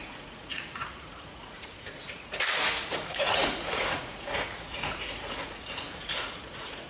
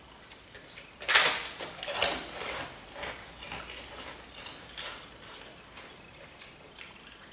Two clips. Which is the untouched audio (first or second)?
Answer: second